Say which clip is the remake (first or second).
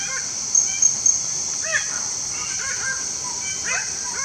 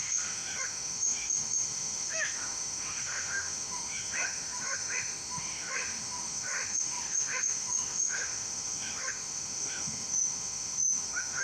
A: second